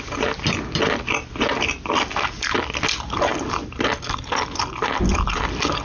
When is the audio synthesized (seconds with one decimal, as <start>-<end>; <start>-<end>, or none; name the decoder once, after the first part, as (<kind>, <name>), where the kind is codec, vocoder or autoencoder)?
none